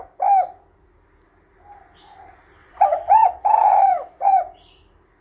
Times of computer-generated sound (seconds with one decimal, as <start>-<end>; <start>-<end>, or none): 2.6-4.4